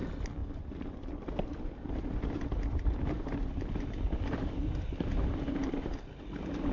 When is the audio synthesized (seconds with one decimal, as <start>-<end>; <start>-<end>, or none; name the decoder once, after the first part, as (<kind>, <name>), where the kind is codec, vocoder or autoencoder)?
0.4-4.4 (vocoder, BigVGAN v2); 5.6-6.3